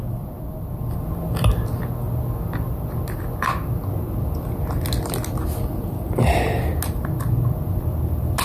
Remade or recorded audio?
recorded